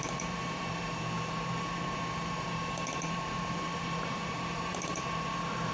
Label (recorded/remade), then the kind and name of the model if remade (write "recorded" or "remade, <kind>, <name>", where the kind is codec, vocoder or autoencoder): remade, vocoder, BigVGAN v2